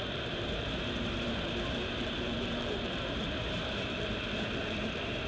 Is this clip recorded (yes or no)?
no